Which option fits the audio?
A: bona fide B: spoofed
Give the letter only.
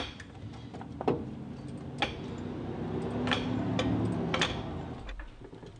A